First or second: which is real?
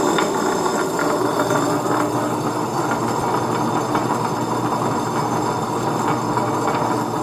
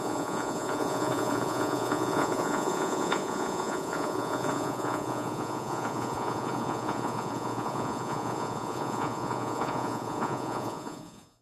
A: first